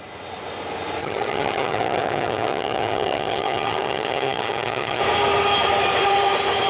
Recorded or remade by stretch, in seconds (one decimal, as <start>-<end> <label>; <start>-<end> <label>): 0.0-1.0 recorded; 1.0-5.0 remade; 5.0-6.7 recorded